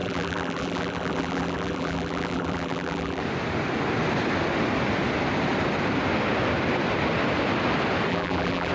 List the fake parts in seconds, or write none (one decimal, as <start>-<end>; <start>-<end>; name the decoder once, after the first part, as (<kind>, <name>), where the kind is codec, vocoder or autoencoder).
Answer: 0.0-3.2 (vocoder, BigVGAN v2); 8.1-8.7